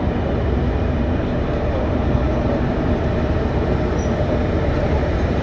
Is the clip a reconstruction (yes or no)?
yes